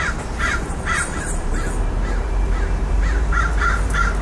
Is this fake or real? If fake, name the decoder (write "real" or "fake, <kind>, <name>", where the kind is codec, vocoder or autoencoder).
fake, vocoder, BigVGAN v2